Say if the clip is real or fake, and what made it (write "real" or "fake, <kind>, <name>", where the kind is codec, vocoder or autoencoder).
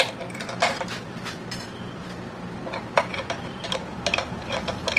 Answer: real